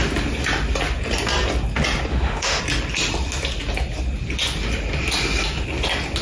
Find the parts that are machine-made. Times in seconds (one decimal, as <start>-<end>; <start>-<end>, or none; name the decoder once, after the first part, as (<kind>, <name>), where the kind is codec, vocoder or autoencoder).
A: 2.1-2.6 (autoencoder, DAC-VAE)